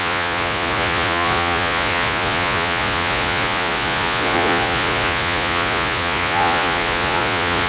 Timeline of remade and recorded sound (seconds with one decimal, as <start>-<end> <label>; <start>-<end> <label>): 0.0-7.7 remade